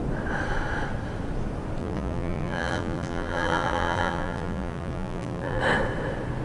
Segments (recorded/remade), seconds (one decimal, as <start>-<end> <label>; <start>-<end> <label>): 0.0-1.8 recorded; 1.8-5.6 remade; 5.6-6.4 recorded